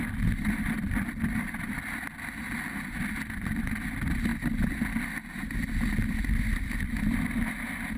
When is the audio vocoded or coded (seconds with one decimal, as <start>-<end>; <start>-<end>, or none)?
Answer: none